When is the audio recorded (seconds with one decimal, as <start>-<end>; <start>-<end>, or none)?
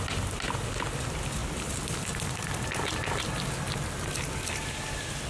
0.0-5.3